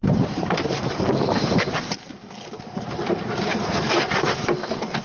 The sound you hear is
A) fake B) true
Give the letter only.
A